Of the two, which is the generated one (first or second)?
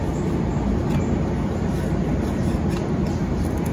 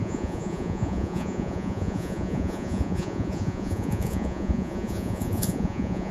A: second